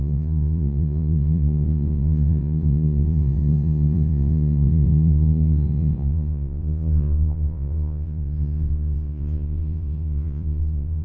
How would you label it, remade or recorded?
remade